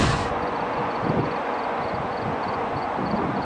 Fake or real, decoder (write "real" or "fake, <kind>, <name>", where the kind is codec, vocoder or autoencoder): fake, vocoder, Vocos